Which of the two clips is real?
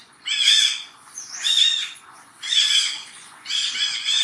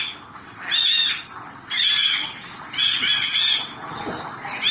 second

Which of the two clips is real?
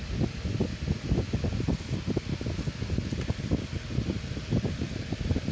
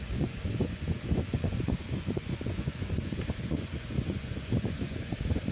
first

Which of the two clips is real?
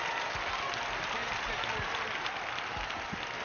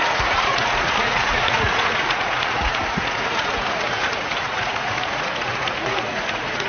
first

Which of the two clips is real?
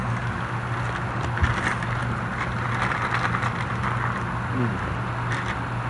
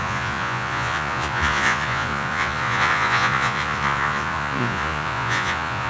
first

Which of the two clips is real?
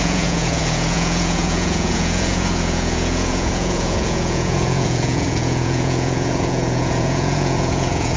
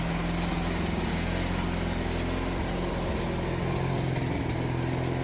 second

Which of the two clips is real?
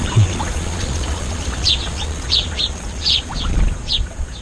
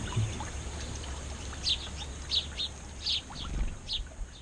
second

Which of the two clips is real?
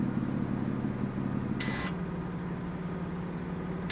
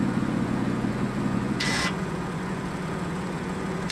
first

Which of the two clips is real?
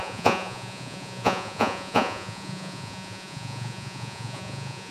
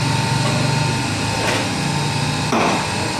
second